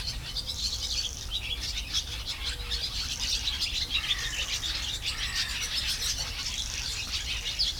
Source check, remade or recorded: recorded